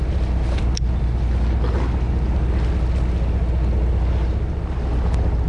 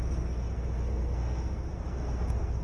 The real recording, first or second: first